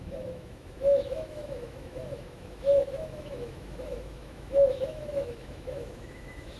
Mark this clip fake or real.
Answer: fake